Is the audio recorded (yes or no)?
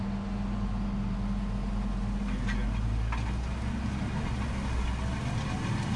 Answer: yes